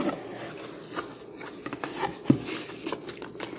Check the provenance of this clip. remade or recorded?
recorded